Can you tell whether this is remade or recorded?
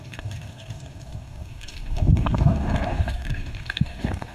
remade